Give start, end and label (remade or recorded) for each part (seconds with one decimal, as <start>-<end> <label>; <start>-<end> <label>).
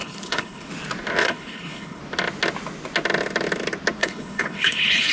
0.0-0.7 remade; 0.7-1.2 recorded; 1.2-2.0 remade; 2.0-4.0 recorded; 4.0-5.1 remade